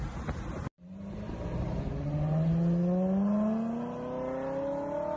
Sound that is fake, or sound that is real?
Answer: real